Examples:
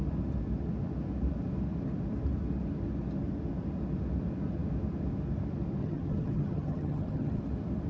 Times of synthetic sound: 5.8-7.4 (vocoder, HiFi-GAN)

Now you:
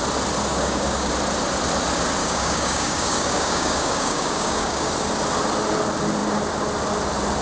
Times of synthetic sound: 0.5-1.1 (codec, DAC); 2.2-4.9